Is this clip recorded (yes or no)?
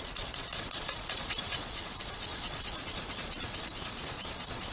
no